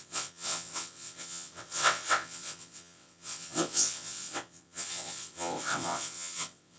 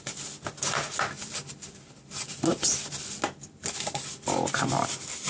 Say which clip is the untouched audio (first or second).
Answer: second